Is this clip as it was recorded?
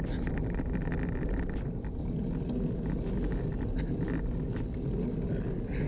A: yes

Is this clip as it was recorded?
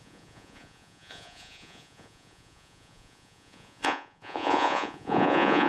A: no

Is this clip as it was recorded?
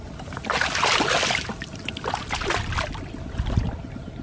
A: yes